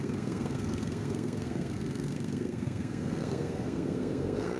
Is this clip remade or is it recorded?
remade